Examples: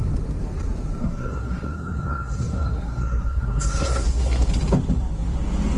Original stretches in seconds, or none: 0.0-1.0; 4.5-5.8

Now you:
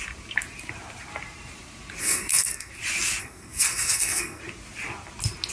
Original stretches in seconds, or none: 0.0-2.0; 2.7-3.2; 4.4-5.5

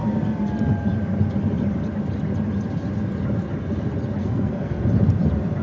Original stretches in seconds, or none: 0.0-4.2; 4.8-5.6

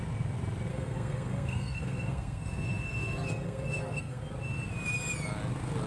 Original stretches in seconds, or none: 0.0-0.7; 4.2-5.9

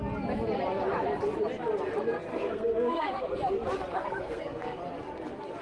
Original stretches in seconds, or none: 0.0-2.3; 3.4-4.1; 4.8-5.6